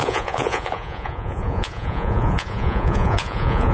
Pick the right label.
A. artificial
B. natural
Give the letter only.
A